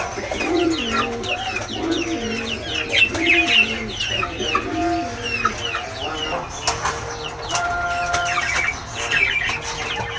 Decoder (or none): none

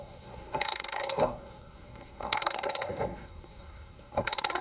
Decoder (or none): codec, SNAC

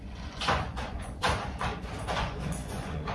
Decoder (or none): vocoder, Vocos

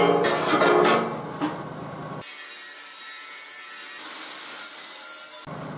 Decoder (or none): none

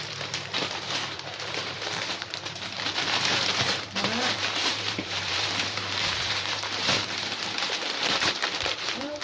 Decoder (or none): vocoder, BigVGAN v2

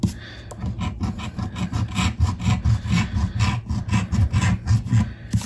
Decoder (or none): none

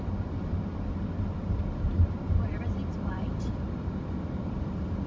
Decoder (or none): vocoder, BigVGAN v2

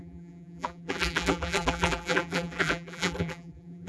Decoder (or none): vocoder, BigVGAN v2